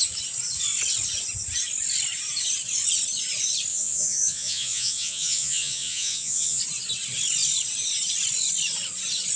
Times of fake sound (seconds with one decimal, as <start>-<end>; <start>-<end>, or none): 3.7-6.6